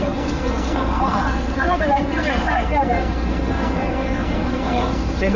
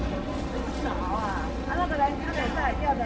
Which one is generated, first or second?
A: first